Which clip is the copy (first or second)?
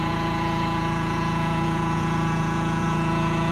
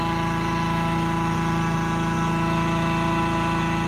first